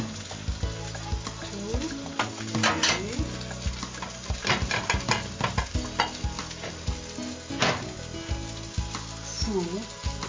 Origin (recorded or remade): recorded